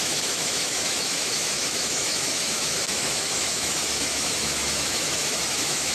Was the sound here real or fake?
fake